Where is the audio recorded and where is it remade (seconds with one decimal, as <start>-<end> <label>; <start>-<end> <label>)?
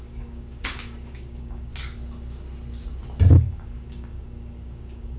0.0-1.7 remade; 1.7-3.3 recorded; 3.3-5.2 remade